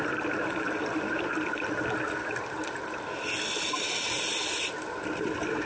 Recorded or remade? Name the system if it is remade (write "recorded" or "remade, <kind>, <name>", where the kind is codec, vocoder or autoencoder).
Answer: recorded